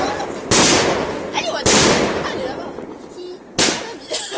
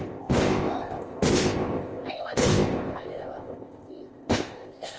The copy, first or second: second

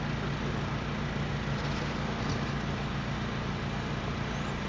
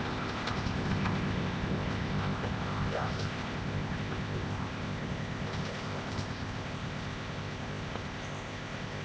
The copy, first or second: second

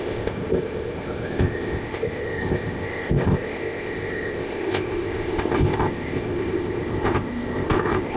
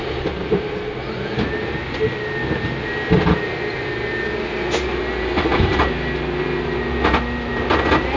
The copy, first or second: first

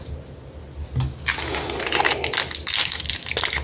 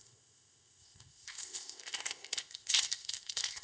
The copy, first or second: second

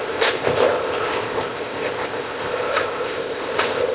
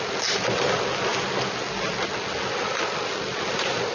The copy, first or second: first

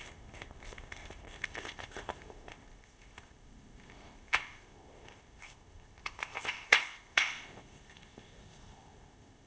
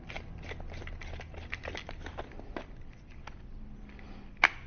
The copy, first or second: first